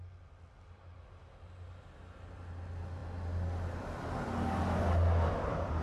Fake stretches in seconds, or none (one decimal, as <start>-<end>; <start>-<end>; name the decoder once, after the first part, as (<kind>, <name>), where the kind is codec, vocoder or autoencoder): none